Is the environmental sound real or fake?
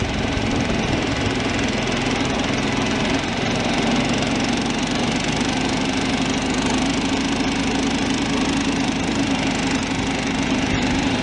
real